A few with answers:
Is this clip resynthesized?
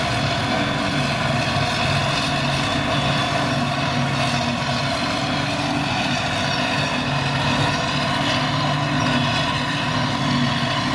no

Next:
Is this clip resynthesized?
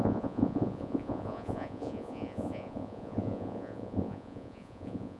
yes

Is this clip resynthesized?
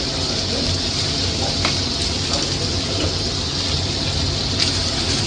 no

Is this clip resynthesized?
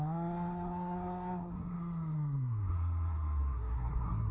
yes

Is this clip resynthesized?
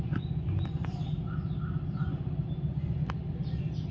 no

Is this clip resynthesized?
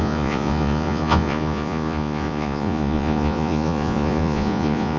yes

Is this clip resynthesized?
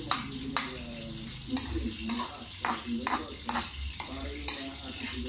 no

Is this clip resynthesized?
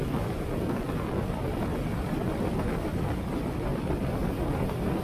no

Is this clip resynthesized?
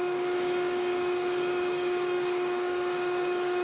yes